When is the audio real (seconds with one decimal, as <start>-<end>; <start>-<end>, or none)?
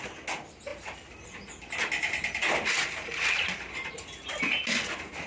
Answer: 0.0-5.3